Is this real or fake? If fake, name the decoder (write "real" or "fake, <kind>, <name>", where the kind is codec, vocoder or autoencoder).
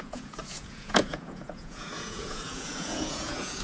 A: fake, vocoder, Vocos